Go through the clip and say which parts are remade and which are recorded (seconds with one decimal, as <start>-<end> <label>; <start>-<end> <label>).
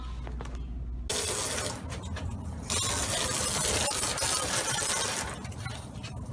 0.0-6.3 recorded